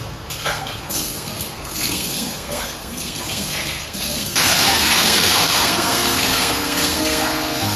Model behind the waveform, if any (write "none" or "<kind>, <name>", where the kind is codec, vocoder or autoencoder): codec, SNAC